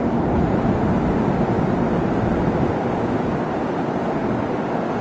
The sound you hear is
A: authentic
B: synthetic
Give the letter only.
A